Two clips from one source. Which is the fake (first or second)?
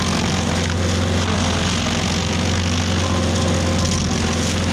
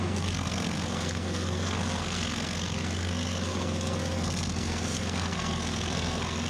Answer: second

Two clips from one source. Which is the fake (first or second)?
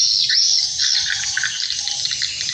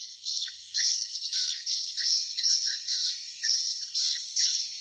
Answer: second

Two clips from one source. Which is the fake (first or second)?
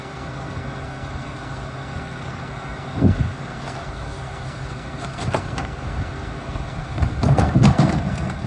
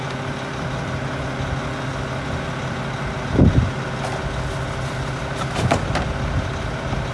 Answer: first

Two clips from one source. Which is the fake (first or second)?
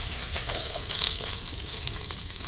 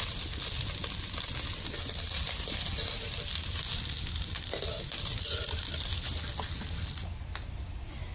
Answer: first